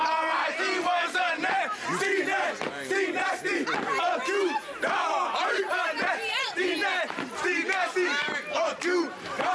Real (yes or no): no